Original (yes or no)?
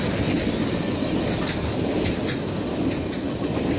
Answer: yes